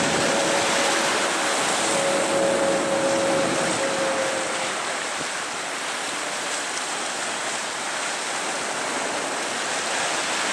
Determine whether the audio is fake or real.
real